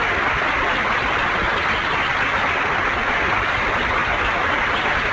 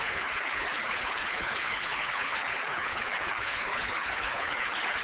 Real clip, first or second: first